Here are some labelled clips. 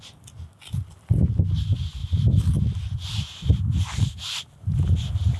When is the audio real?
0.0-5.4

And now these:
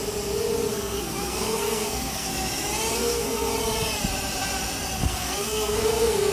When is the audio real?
0.0-0.7; 2.3-2.9; 3.5-5.0

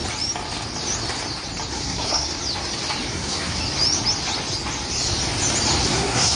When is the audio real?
0.0-1.7; 2.4-3.1; 3.6-5.8

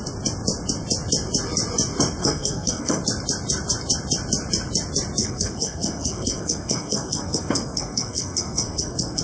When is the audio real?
0.0-2.2; 3.0-5.2

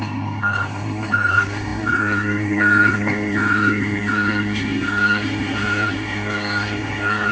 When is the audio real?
none

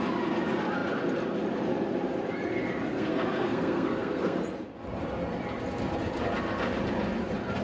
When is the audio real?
0.0-2.9; 4.4-7.6